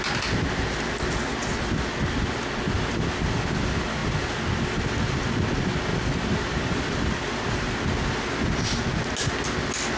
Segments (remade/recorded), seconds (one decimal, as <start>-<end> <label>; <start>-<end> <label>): 0.0-4.0 recorded; 4.0-5.2 remade; 5.2-5.9 recorded; 5.9-8.8 remade; 8.8-10.0 recorded